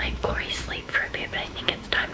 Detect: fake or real fake